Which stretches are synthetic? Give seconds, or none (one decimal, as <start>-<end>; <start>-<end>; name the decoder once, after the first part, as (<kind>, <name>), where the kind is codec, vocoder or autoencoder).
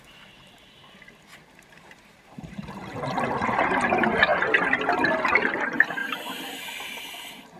0.0-4.3 (vocoder, BigVGAN v2); 5.3-6.0; 7.0-7.6